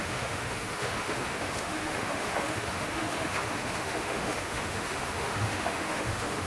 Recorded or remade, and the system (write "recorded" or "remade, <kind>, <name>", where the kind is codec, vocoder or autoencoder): remade, autoencoder, DAC-VAE